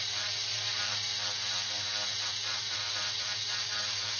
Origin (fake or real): fake